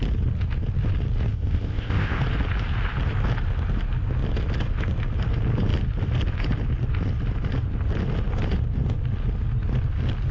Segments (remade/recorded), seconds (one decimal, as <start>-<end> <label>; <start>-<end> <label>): 0.0-1.3 recorded; 1.3-2.2 remade; 2.2-10.3 recorded